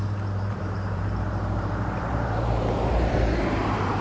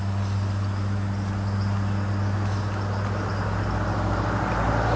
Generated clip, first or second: first